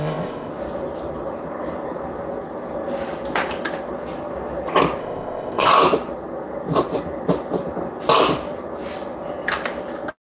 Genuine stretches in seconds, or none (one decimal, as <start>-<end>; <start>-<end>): 0.5-5.0; 5.7-10.2